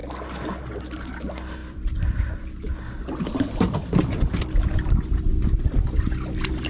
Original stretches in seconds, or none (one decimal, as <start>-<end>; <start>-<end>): 0.0-1.6; 2.4-5.3; 5.8-6.7